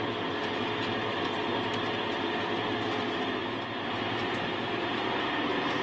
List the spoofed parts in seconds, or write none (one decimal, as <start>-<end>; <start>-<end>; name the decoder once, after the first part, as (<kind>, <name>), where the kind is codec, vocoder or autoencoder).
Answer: none